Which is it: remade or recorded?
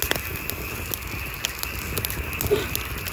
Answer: recorded